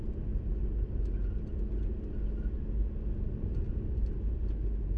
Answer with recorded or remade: recorded